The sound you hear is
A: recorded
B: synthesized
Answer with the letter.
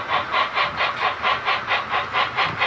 A